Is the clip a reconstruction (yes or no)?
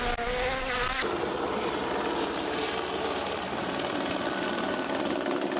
no